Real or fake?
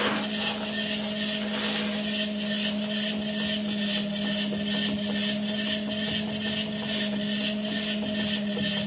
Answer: real